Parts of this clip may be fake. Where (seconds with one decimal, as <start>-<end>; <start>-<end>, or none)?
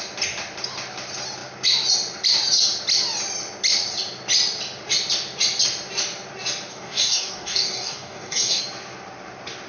6.7-8.6